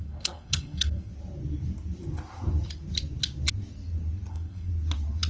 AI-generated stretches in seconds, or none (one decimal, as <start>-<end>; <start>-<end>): 0.0-1.1; 4.3-4.7